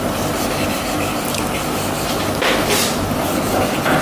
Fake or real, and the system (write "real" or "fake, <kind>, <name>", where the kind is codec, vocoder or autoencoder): real